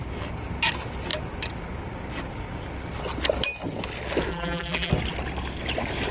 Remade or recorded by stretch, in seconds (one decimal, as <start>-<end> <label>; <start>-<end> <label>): 0.0-4.3 recorded; 4.3-4.9 remade; 4.9-6.1 recorded